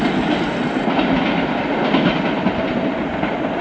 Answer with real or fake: real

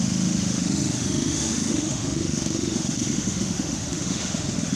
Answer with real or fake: fake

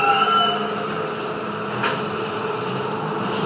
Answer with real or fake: real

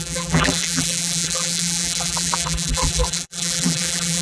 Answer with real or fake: fake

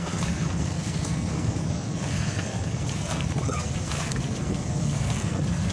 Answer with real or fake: fake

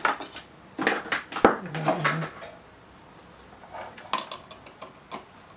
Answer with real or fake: real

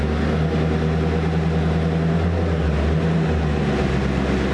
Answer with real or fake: real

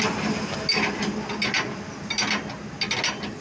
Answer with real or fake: real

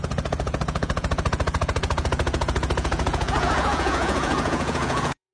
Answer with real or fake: fake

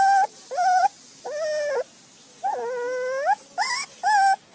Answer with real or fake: real